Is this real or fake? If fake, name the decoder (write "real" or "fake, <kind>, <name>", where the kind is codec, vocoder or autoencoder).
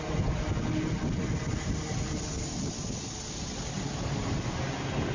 real